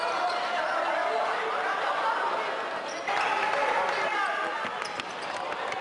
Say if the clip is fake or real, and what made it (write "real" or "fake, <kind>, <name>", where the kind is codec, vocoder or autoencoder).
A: real